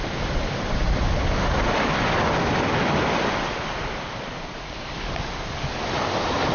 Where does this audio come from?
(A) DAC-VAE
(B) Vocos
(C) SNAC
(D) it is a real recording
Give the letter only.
D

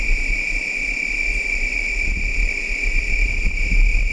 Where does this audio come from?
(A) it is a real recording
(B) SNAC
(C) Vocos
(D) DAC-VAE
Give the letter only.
A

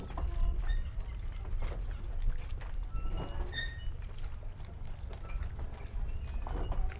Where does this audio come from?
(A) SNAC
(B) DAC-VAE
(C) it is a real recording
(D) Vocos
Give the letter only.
C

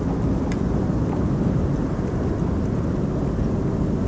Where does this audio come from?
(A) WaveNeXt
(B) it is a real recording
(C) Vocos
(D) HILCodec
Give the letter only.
B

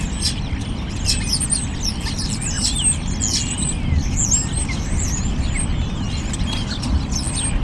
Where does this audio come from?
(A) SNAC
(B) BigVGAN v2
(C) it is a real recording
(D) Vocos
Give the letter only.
C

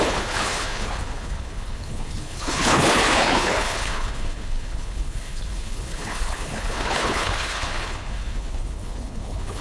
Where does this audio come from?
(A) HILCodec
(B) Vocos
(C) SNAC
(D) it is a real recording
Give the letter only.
A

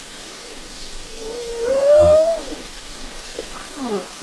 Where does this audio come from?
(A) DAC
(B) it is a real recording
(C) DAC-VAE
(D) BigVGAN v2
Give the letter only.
A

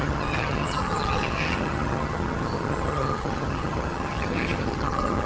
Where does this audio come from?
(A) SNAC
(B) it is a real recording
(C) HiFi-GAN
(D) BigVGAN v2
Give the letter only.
C